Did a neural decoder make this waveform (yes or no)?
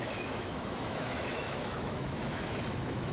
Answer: yes